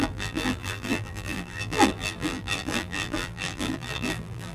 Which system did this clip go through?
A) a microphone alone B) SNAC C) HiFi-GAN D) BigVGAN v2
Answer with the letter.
D